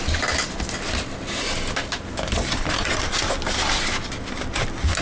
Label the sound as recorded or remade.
recorded